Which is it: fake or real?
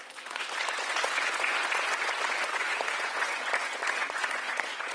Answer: fake